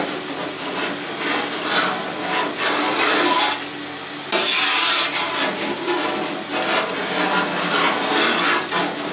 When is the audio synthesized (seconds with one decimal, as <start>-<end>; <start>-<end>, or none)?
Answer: none